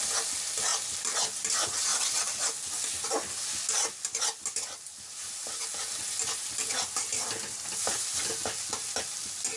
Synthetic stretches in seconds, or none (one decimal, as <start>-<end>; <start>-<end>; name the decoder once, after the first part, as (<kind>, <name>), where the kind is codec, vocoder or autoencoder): 7.1-8.2 (vocoder, BigVGAN v2)